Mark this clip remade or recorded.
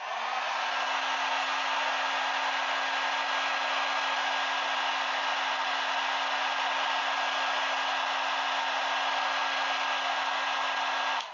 recorded